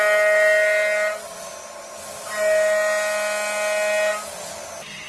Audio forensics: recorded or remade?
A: recorded